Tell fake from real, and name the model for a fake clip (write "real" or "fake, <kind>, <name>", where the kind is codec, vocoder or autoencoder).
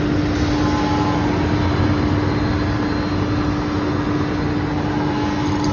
real